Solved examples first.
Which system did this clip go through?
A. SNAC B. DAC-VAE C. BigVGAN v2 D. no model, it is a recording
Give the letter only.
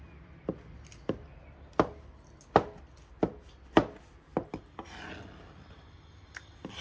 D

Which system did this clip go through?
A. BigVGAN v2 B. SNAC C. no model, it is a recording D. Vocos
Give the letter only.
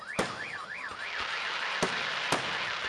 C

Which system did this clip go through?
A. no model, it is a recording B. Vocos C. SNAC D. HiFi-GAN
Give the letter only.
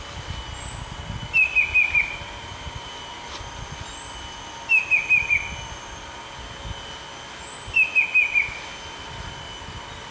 A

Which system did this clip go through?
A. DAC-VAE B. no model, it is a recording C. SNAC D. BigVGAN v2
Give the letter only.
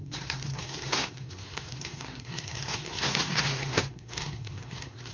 C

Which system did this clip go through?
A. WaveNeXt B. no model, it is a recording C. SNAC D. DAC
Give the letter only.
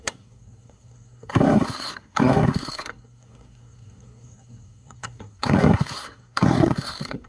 C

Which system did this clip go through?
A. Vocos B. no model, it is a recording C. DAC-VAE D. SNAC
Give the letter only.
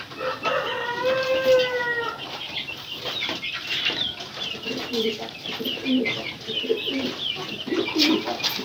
B